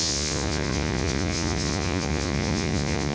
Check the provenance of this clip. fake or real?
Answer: fake